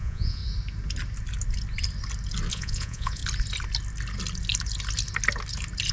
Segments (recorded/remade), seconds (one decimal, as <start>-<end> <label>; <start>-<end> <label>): 0.0-0.4 remade; 0.4-2.5 recorded; 2.5-3.2 remade; 3.2-5.9 recorded